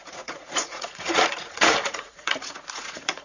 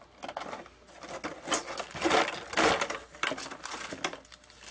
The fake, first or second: first